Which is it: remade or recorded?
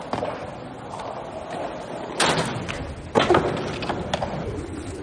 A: recorded